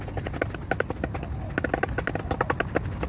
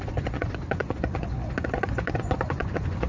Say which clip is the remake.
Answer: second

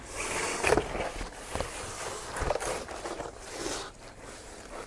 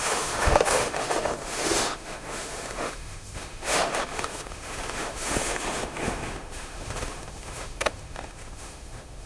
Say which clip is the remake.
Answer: second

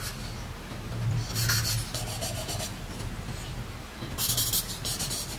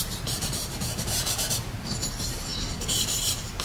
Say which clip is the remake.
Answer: second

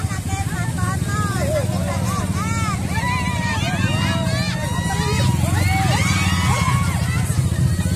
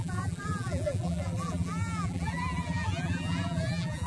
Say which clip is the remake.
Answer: second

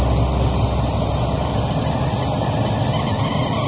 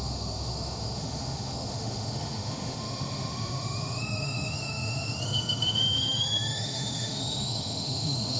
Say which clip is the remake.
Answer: second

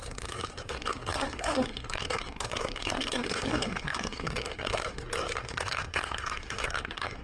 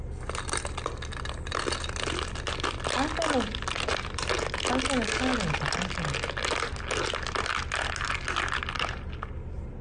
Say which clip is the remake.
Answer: first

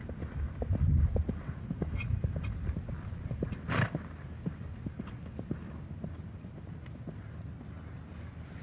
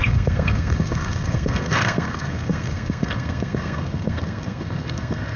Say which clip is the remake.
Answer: second